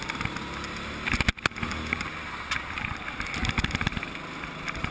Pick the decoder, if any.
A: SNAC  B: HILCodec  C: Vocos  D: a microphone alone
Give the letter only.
D